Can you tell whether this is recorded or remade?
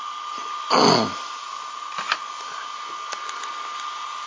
recorded